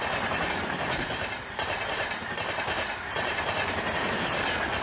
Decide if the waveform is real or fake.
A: fake